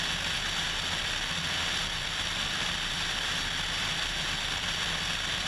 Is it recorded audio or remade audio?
recorded